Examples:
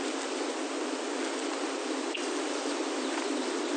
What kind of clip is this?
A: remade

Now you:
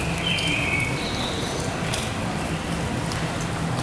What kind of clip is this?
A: remade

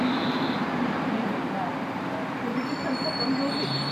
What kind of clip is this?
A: recorded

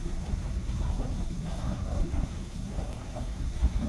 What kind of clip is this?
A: remade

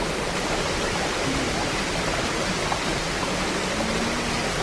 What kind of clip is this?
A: recorded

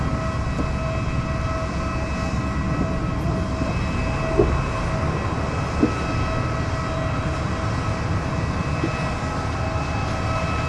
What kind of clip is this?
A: recorded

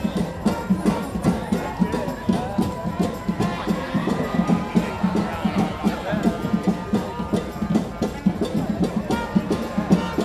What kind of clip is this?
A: recorded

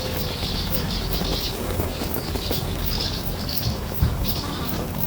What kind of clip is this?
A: remade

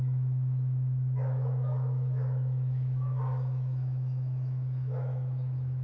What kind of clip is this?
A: remade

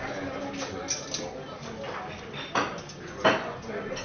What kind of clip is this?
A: recorded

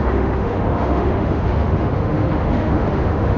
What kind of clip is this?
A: remade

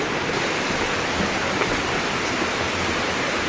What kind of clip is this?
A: recorded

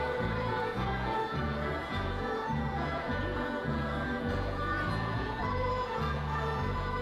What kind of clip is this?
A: remade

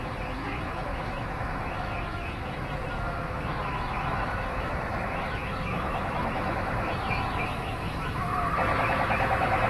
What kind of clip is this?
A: remade